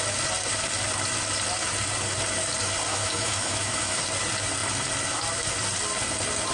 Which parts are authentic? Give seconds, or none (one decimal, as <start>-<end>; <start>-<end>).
0.0-2.9; 4.0-6.5